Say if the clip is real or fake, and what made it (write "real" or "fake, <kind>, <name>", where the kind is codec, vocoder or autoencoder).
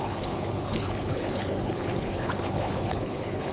fake, codec, HILCodec